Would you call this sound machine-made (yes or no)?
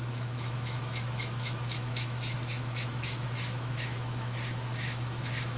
yes